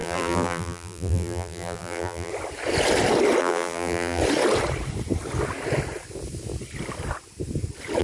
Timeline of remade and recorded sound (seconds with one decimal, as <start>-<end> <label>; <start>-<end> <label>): 0.0-2.3 remade; 2.3-3.4 recorded; 3.4-4.2 remade; 4.2-8.0 recorded